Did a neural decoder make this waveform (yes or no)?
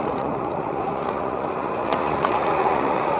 yes